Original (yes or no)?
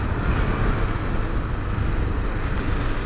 yes